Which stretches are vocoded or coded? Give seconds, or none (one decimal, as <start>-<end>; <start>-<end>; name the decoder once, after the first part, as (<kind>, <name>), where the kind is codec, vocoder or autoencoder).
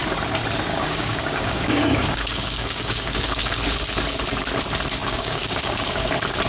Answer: 0.7-3.6 (codec, DAC); 5.0-6.1